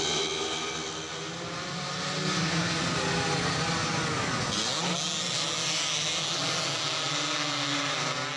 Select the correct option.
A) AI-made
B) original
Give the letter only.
B